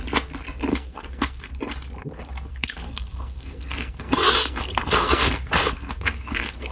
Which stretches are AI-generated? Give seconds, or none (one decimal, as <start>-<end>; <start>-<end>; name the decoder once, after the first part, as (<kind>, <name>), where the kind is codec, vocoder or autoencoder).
0.7-1.5 (codec, SNAC); 2.5-6.7